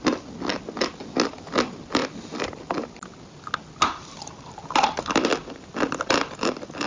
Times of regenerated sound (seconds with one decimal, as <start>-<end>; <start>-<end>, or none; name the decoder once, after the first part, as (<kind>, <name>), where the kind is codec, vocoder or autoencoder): none